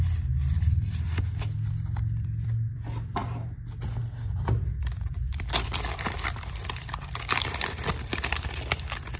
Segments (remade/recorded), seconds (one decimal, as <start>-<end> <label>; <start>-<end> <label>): 0.0-3.2 remade; 3.2-4.0 recorded; 4.0-9.2 remade